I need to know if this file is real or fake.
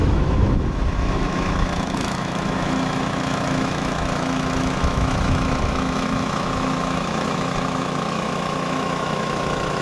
fake